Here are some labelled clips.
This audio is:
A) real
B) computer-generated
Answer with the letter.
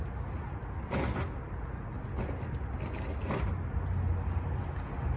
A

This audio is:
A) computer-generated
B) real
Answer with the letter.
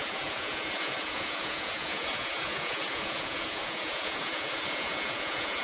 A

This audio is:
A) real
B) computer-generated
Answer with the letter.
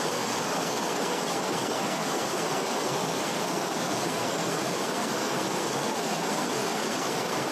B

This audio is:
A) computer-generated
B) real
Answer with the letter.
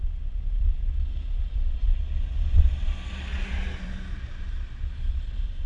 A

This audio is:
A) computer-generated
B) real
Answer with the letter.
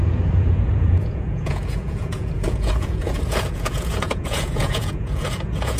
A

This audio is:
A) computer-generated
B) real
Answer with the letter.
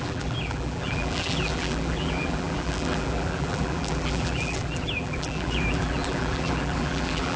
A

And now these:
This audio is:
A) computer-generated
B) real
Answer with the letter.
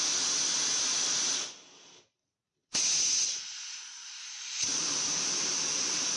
B